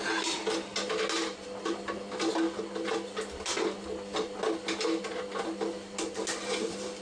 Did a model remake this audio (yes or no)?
no